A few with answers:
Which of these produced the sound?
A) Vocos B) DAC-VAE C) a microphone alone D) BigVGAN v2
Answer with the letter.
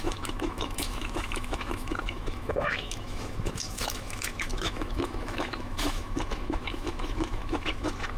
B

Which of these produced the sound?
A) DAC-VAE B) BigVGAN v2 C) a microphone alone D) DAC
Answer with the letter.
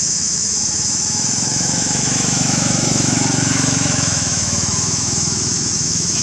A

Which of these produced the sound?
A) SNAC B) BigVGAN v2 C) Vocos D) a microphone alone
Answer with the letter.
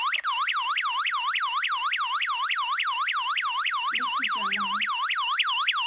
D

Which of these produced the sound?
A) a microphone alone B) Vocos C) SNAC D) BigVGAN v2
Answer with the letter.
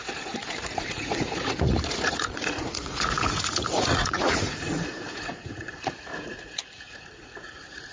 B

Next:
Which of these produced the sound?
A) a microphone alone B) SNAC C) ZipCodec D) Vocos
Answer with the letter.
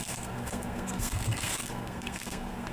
B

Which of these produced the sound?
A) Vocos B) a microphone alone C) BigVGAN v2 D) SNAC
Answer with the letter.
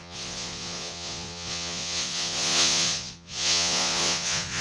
A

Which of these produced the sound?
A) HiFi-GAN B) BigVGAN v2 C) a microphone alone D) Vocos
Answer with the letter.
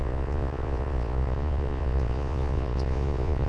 D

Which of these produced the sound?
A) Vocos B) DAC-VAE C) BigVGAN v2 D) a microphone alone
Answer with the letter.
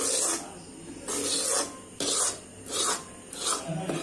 D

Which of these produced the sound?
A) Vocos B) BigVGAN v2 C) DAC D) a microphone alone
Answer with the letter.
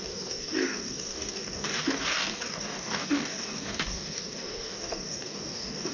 C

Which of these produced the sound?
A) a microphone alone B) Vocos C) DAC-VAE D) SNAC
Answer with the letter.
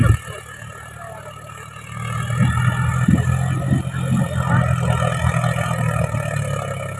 A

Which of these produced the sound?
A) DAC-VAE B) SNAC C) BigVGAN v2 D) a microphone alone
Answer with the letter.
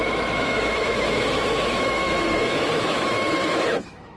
A